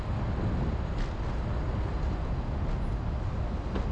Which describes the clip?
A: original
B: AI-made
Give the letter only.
A